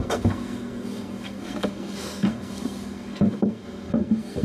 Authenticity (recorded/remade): remade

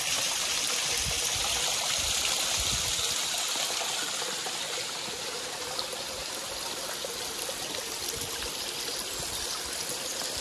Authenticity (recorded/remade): recorded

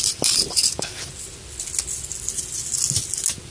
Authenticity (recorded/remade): recorded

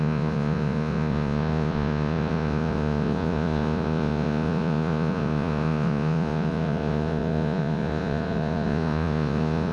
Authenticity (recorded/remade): remade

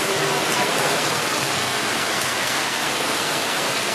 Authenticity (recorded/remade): remade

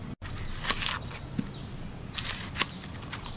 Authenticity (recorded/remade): recorded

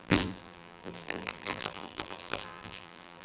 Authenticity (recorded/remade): remade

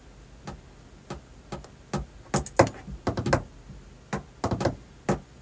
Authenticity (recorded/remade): recorded